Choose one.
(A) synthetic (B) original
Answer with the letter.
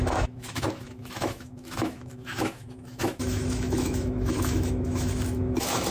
A